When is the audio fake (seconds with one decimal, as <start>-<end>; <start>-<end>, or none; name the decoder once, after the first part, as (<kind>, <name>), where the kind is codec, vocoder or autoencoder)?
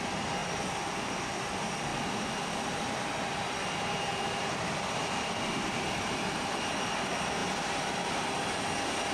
0.4-1.1 (vocoder, BigVGAN v2); 1.9-6.7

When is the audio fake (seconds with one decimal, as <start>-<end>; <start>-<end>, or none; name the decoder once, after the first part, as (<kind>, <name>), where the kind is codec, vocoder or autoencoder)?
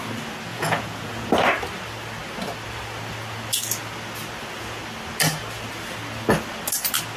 0.5-1.3 (vocoder, Vocos)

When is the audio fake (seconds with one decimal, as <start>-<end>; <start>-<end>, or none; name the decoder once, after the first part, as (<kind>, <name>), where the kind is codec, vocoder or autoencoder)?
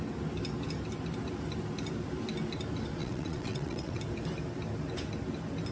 3.0-4.0 (vocoder, WaveNeXt)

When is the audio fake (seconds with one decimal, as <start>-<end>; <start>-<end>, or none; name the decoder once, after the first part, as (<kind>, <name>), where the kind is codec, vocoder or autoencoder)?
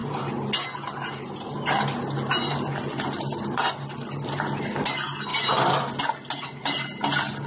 none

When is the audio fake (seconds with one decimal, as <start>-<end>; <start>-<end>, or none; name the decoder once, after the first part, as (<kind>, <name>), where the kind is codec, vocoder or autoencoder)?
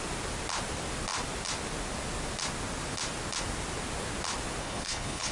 4.6-5.3 (codec, HILCodec)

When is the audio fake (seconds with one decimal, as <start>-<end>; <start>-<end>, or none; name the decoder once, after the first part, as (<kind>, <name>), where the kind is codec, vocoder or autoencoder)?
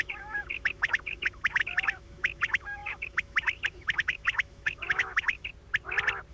0.0-5.5 (autoencoder, DAC-VAE)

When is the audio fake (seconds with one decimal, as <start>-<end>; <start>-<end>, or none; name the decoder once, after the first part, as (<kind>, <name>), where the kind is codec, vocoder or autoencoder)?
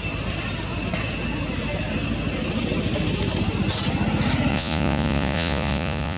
4.5-6.2 (vocoder, Vocos)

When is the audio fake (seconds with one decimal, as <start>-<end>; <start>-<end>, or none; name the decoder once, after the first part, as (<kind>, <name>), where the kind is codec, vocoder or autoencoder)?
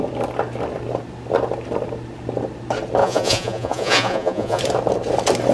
3.0-4.6 (vocoder, Vocos)